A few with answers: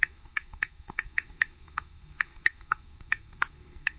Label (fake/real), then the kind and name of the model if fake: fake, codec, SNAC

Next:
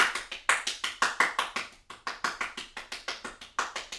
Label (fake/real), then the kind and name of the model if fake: real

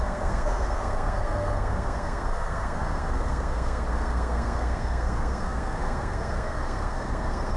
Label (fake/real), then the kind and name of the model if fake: fake, codec, SNAC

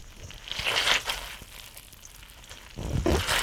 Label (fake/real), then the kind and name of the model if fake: real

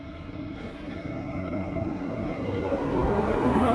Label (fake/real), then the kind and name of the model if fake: fake, codec, SNAC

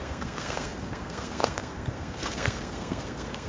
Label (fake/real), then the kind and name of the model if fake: fake, codec, SNAC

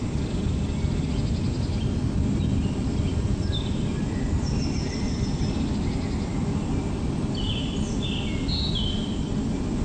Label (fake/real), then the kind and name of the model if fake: real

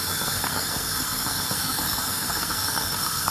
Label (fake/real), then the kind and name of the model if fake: fake, codec, SNAC